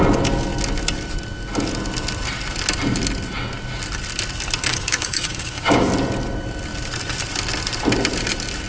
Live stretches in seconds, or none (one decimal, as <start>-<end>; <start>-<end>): 0.0-4.7; 5.9-8.7